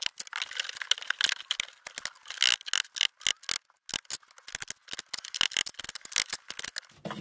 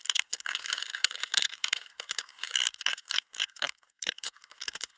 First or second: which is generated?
second